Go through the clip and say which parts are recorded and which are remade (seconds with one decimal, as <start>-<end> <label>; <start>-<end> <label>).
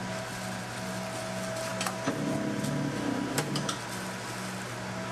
0.0-5.1 recorded